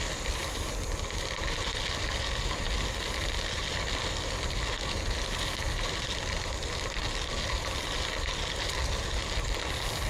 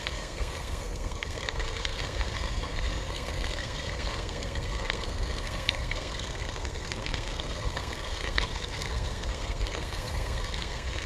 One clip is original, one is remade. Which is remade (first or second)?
second